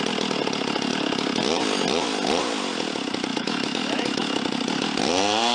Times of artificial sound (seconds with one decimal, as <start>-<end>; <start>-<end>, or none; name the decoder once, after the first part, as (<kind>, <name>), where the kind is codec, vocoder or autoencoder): 3.3-4.4 (autoencoder, DAC-VAE)